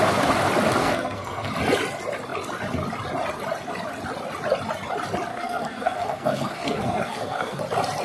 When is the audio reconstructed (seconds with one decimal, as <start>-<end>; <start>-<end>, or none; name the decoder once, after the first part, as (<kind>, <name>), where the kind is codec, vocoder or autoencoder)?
0.8-1.5 (codec, SNAC); 5.3-7.6